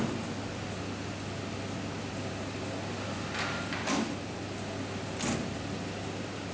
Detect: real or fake real